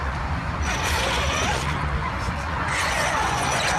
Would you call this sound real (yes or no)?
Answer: no